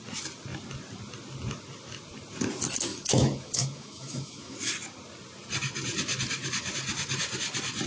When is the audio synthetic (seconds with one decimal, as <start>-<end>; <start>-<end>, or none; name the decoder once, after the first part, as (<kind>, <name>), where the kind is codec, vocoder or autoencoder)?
2.9-4.7 (autoencoder, DAC-VAE)